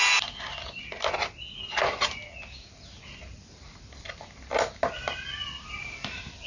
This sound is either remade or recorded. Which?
recorded